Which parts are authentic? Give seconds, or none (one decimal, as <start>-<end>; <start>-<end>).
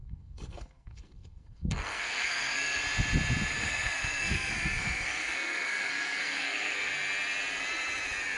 2.8-3.5; 6.9-8.4